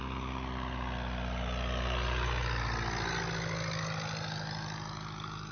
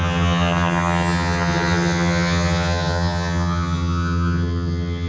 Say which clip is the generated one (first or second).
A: second